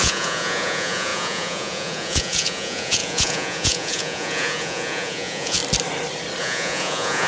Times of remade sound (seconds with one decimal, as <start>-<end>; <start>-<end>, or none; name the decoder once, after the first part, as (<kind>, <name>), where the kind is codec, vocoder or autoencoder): 0.0-5.6 (vocoder, Vocos); 6.4-7.3

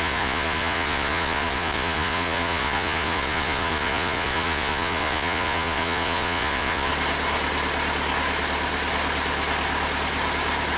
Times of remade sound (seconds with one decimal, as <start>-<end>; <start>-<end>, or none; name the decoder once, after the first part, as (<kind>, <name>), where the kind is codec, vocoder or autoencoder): 0.0-6.9 (vocoder, Vocos)

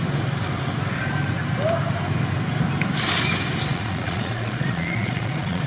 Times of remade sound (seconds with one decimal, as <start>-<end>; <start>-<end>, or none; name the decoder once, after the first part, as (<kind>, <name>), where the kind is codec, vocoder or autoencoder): 3.7-5.7 (vocoder, Vocos)